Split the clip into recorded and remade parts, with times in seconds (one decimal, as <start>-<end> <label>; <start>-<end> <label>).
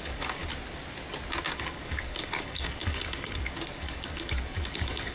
0.0-0.4 remade; 0.4-1.5 recorded; 1.5-5.1 remade